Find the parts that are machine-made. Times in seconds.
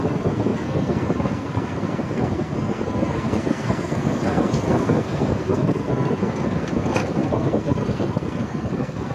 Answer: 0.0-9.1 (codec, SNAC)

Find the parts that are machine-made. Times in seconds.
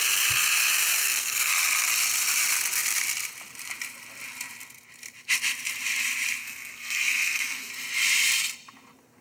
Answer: 1.0-1.5 (codec, SNAC); 6.4-7.7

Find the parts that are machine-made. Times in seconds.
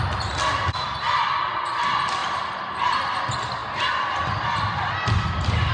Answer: none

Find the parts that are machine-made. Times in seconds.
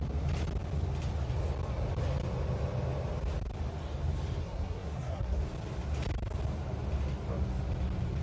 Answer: 4.4-5.4 (codec, SNAC)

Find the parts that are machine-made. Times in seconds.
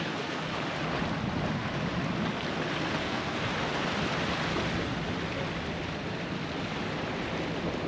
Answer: 0.0-0.5 (codec, SNAC); 3.0-3.5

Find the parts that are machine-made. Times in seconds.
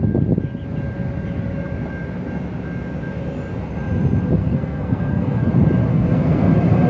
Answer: 4.4-5.5 (codec, SNAC); 5.9-6.5